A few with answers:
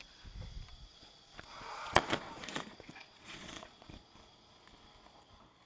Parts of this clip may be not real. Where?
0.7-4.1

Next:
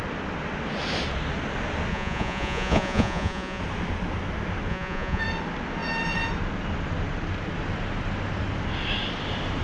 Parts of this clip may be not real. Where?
1.9-3.6; 4.7-5.2